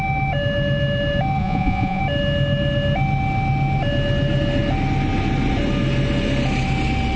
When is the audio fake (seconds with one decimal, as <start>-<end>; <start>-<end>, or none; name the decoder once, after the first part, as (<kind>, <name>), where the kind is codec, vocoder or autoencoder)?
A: 1.4-2.0 (vocoder, Vocos)